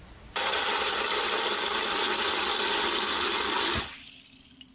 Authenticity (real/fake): real